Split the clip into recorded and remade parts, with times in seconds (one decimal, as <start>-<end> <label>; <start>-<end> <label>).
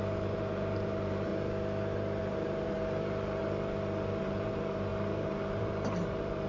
0.0-1.3 remade; 1.3-2.2 recorded; 2.2-3.4 remade; 3.4-4.2 recorded; 4.2-6.5 remade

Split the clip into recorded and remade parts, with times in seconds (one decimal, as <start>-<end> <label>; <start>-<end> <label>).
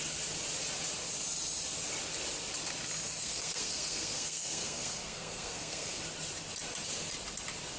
0.0-3.2 recorded; 3.2-6.0 remade; 6.0-7.8 recorded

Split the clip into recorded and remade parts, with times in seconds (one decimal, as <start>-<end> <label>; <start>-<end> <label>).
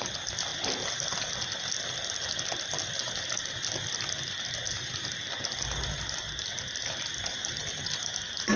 0.0-8.6 recorded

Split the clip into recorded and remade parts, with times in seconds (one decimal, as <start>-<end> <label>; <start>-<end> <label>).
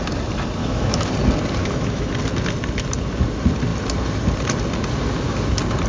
0.0-0.6 recorded; 0.6-1.1 remade; 1.1-1.6 recorded; 1.6-2.1 remade; 2.1-5.9 recorded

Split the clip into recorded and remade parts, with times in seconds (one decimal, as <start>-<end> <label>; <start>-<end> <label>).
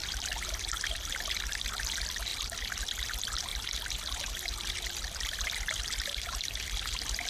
0.0-7.3 recorded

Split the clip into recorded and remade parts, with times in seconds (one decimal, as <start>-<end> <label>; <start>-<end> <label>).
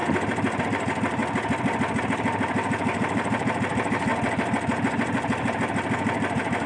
0.0-0.6 recorded; 0.6-1.2 remade; 1.2-2.0 recorded; 2.0-4.1 remade; 4.1-4.9 recorded; 4.9-6.7 remade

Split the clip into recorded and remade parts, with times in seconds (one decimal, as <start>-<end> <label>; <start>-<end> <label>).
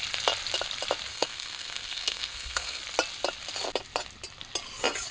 0.0-1.1 recorded; 1.1-2.8 remade; 2.8-5.1 recorded